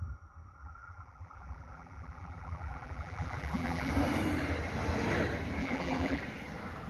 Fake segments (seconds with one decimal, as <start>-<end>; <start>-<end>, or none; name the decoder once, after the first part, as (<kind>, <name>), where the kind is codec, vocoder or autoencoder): 0.6-3.9 (vocoder, BigVGAN v2); 5.6-6.2